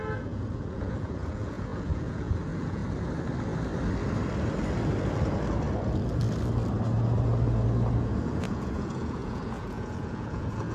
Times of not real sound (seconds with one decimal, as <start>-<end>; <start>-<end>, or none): 0.0-2.8; 8.0-10.7